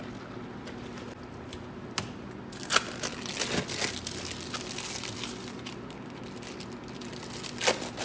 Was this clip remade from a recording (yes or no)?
no